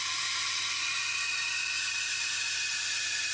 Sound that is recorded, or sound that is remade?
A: remade